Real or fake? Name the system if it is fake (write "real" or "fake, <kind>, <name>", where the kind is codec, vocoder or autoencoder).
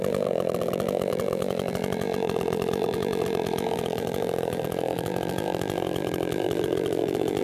fake, vocoder, BigVGAN v2